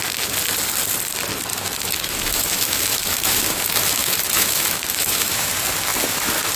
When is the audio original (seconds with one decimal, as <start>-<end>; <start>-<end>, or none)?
0.0-1.5; 5.5-6.6